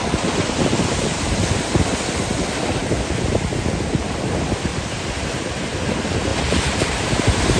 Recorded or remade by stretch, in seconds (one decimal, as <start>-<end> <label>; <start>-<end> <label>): 0.0-4.7 recorded; 4.7-5.8 remade; 5.8-7.6 recorded